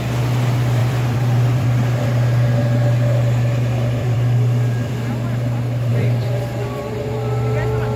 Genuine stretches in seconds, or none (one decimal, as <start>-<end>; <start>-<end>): 0.0-0.8; 2.0-4.0; 4.9-5.9; 7.1-8.0